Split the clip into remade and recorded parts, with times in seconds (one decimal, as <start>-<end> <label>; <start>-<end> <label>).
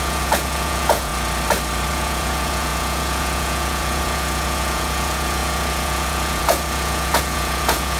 0.0-1.1 remade; 1.1-1.9 recorded; 1.9-8.0 remade